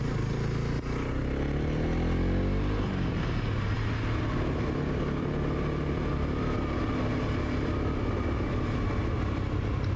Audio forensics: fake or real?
real